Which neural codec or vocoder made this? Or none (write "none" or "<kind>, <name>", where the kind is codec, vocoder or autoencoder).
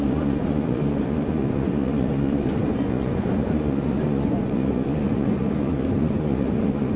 vocoder, Vocos